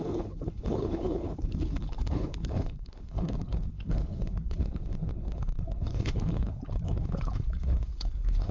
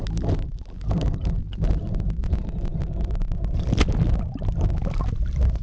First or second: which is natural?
second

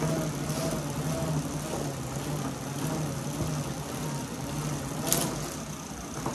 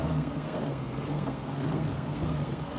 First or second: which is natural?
first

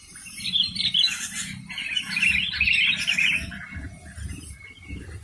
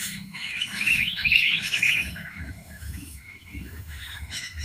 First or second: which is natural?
first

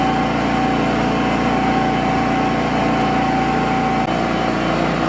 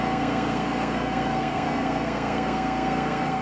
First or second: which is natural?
first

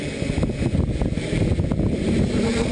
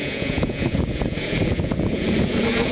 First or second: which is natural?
first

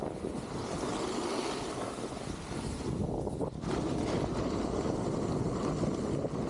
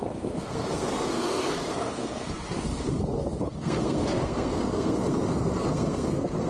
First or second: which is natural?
first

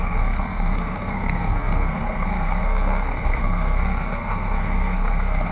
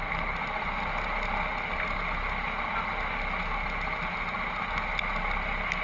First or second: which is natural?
second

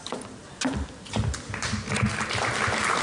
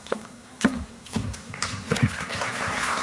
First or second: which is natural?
first